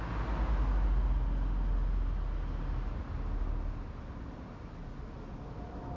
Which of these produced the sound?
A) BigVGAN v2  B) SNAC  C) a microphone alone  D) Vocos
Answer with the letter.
C